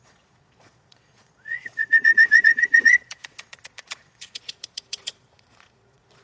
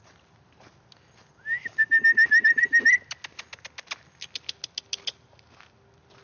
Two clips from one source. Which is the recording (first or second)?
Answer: second